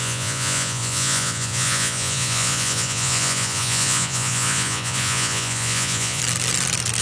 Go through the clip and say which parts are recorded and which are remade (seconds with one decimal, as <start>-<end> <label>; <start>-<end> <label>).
0.0-6.2 remade; 6.2-7.0 recorded